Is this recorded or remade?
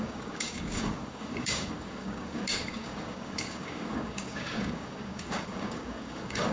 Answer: remade